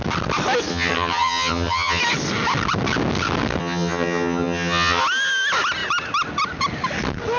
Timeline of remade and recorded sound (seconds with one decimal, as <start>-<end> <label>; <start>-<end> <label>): 0.0-0.7 recorded; 0.7-2.0 remade; 2.0-3.6 recorded; 3.6-5.0 remade; 5.0-7.4 recorded